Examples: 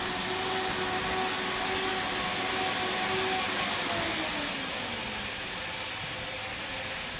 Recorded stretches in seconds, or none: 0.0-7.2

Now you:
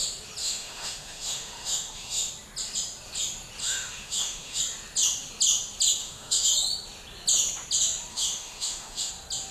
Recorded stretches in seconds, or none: 0.0-0.4; 2.3-3.6; 4.6-6.0; 6.5-8.1; 9.1-9.5

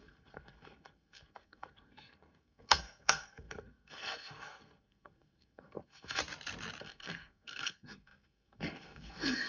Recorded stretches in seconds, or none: 6.2-6.8

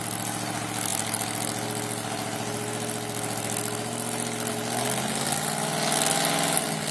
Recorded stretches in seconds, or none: 0.0-6.9

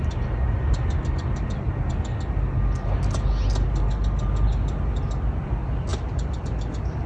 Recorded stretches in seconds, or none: 0.0-7.1

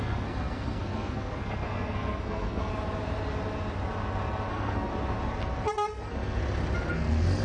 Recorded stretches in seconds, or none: 2.7-4.5; 4.9-5.7; 6.4-6.9